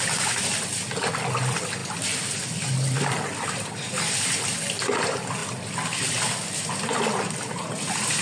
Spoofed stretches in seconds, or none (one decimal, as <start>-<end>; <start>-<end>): none